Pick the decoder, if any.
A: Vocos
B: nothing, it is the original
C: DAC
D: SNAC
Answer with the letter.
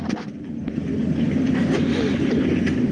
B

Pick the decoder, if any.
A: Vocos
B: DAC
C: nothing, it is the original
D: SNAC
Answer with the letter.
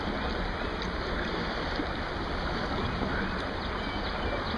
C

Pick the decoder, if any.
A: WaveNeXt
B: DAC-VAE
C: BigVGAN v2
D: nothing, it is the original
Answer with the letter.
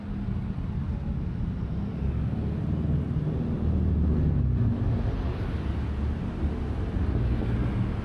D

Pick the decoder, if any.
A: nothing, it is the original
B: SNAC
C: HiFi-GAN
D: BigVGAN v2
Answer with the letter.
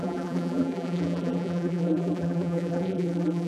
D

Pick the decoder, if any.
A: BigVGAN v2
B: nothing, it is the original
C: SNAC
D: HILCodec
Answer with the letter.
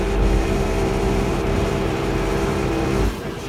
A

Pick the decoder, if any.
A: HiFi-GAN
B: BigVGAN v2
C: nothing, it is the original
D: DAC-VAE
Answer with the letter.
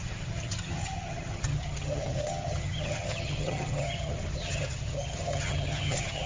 A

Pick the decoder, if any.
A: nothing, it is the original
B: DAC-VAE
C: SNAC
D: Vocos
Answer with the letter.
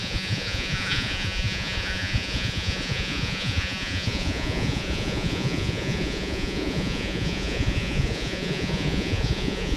D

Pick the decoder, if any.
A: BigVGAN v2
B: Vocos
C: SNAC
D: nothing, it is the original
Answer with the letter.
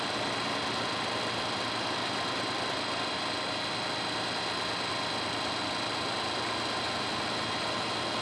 D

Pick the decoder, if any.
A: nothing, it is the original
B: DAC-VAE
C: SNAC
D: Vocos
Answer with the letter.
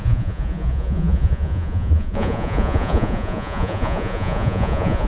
D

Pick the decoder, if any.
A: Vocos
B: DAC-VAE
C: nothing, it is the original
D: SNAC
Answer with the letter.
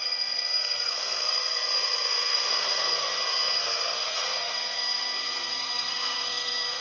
D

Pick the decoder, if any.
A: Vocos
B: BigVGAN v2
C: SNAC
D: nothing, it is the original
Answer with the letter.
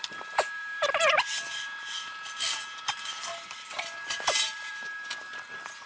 B